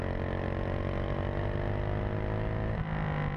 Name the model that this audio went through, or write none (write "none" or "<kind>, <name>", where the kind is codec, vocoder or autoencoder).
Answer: none